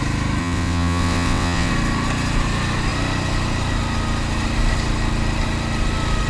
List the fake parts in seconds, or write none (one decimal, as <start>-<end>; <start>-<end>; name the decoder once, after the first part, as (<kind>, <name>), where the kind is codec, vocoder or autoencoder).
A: 0.4-1.7 (vocoder, WaveNeXt)